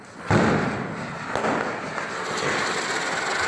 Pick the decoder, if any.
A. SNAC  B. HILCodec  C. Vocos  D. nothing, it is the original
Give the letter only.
D